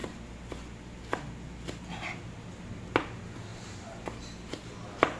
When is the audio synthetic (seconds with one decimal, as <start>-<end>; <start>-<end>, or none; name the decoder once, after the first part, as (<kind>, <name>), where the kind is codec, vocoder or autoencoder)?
3.5-4.2 (vocoder, BigVGAN v2)